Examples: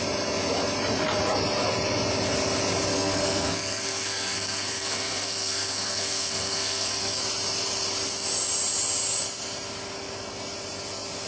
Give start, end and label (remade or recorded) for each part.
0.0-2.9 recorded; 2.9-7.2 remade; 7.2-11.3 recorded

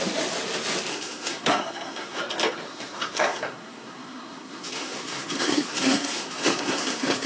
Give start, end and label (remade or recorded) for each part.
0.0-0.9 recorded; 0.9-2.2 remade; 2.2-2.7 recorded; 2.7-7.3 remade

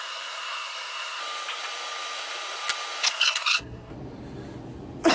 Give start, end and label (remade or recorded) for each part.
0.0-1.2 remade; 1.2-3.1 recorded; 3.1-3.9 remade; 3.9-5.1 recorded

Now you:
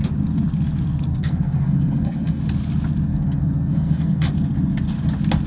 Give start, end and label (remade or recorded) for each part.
0.0-1.1 recorded; 1.1-2.4 remade; 2.4-3.1 recorded; 3.1-4.3 remade; 4.3-5.5 recorded

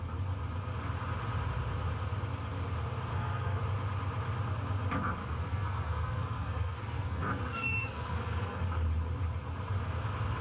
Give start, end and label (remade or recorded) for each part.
0.0-3.1 recorded; 3.1-3.6 remade; 3.6-5.2 recorded; 5.2-8.6 remade; 8.6-10.4 recorded